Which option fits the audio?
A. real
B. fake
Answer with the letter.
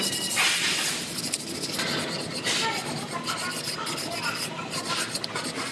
A